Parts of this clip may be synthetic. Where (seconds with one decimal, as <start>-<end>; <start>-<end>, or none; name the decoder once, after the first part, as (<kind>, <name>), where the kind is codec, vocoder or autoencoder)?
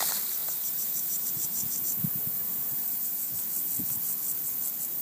0.4-3.4 (vocoder, BigVGAN v2)